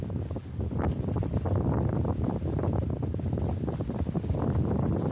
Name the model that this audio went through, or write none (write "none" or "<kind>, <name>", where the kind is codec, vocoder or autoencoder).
none